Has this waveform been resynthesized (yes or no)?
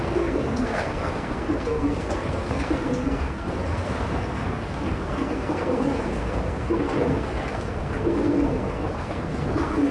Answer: yes